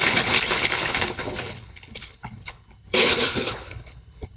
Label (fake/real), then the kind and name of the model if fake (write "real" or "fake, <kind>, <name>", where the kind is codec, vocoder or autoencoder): fake, codec, HILCodec